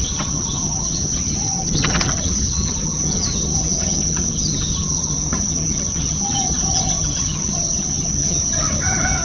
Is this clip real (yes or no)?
no